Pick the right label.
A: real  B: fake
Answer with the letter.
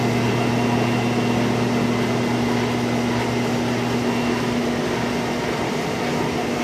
A